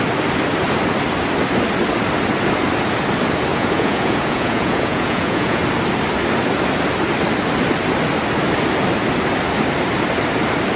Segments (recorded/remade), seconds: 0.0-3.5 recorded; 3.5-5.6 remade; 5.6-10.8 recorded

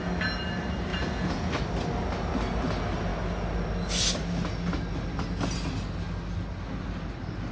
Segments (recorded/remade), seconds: 0.0-0.9 recorded; 0.9-1.5 remade; 1.5-7.5 recorded

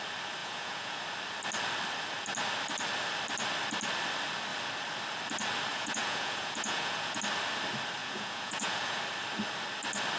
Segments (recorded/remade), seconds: 0.0-0.4 recorded; 0.4-1.0 remade; 1.0-5.7 recorded; 5.7-7.2 remade; 7.2-8.0 recorded; 8.0-9.0 remade; 9.0-10.2 recorded

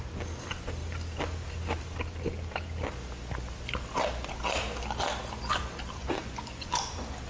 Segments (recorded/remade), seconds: 0.0-6.0 recorded; 6.0-6.7 remade; 6.7-7.3 recorded

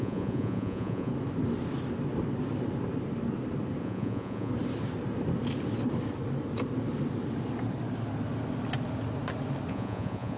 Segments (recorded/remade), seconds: 0.0-1.1 remade; 1.1-3.8 recorded; 3.8-4.5 remade; 4.5-9.7 recorded; 9.7-10.4 remade

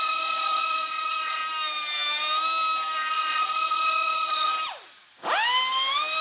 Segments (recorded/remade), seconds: 0.0-1.4 remade; 1.4-3.1 recorded; 3.1-4.5 remade; 4.5-6.2 recorded